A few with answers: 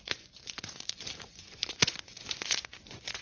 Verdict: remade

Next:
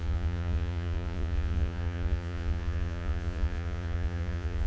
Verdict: remade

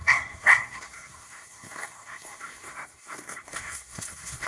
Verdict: remade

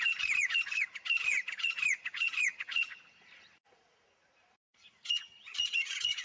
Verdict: remade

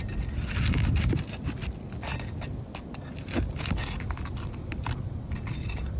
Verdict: recorded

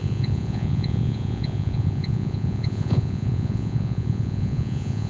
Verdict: remade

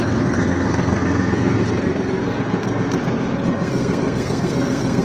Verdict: remade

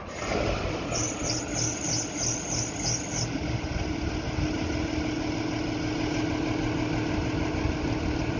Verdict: recorded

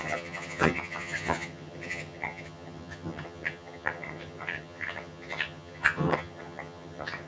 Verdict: remade